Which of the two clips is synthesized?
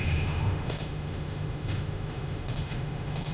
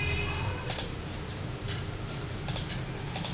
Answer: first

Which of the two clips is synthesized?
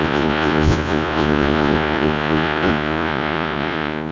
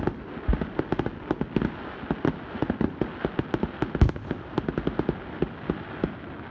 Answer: first